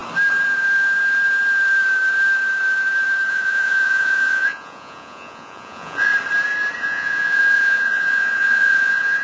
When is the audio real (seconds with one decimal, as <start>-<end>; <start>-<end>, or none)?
0.0-3.3; 6.1-6.8